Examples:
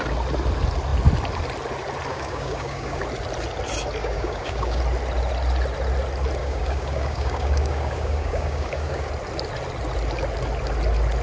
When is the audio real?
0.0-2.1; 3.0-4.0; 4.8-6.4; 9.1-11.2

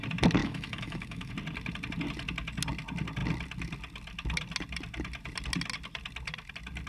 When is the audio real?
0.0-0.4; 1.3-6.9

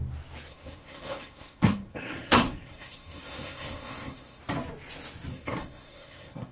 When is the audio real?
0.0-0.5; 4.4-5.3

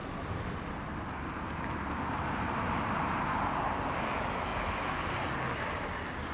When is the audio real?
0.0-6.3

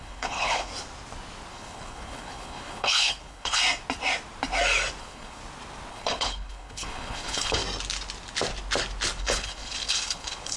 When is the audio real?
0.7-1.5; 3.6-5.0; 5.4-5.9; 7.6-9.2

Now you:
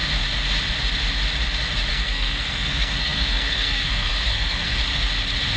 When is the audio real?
0.0-1.9; 4.8-5.6

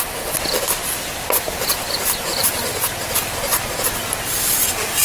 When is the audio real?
0.0-2.3; 2.8-5.0